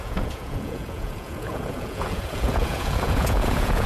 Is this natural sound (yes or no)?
no